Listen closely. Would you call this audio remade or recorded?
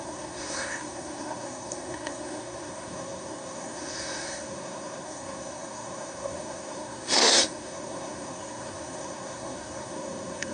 remade